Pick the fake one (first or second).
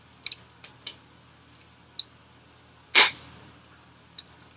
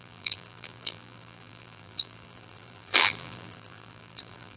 second